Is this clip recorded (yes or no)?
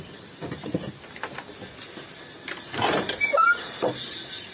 yes